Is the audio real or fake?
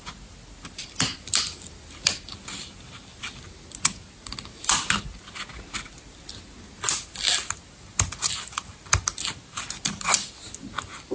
real